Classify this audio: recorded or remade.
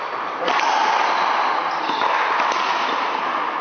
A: recorded